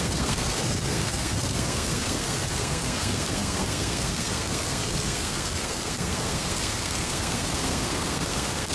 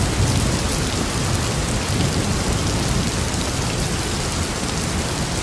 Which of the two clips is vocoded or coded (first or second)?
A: first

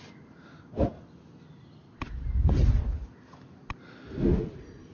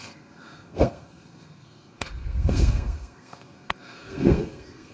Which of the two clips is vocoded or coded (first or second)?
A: second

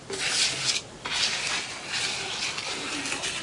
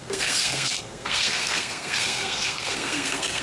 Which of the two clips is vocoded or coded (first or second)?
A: second